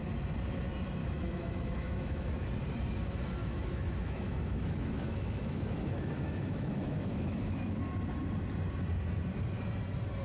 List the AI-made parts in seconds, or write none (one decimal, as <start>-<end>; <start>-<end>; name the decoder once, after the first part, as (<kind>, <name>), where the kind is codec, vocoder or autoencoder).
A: 1.0-2.5 (autoencoder, DAC-VAE); 3.4-7.8